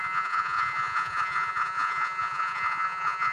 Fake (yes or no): yes